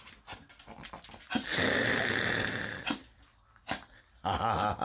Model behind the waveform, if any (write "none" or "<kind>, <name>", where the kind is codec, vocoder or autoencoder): none